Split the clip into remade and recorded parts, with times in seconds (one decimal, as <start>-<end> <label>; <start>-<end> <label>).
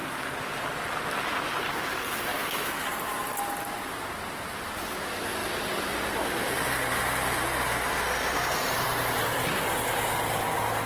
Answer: 0.0-2.3 recorded; 2.3-2.9 remade; 2.9-10.9 recorded